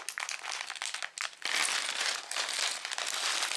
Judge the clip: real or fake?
real